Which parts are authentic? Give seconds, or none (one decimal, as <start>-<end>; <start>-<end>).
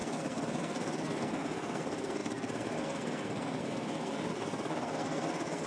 none